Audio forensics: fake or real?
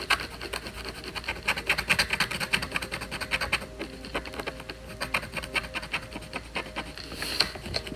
real